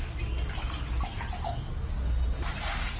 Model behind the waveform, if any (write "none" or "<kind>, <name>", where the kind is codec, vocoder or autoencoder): none